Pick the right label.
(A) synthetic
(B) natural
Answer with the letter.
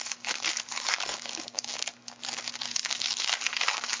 A